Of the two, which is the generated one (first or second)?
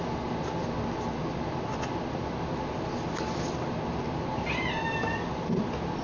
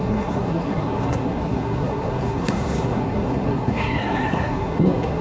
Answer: second